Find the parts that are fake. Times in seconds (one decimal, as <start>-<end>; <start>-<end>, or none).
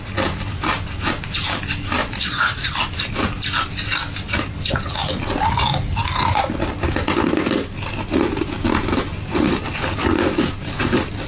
2.0-2.7